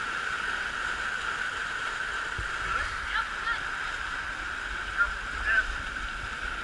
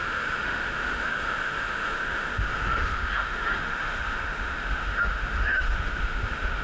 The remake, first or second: second